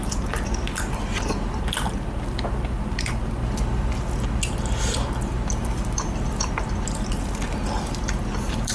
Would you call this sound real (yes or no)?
yes